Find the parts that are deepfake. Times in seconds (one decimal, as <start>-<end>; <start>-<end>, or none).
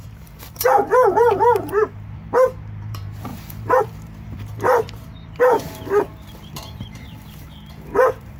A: 0.0-8.4